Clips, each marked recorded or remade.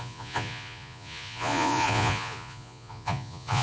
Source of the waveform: remade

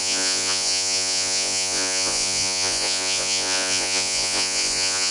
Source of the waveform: remade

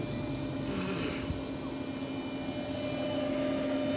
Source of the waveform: recorded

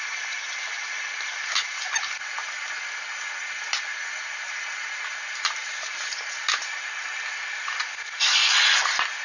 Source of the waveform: recorded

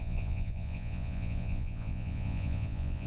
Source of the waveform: remade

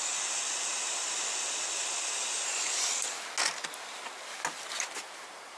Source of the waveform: recorded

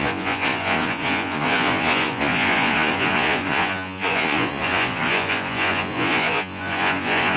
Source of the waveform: remade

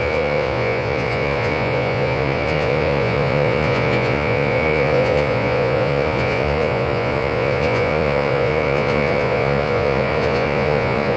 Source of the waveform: remade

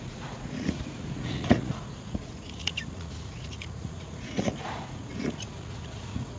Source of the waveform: remade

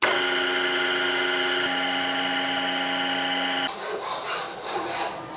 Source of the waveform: recorded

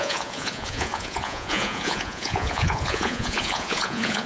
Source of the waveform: remade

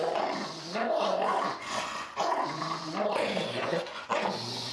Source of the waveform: remade